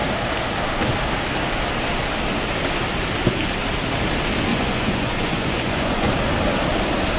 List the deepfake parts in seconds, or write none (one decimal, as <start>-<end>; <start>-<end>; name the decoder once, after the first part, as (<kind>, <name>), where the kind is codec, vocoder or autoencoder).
4.5-6.1 (vocoder, Vocos)